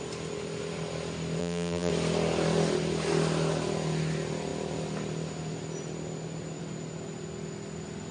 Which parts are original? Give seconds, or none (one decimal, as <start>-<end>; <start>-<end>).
0.0-1.4; 1.9-8.1